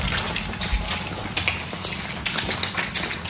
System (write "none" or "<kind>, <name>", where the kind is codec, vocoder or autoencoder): none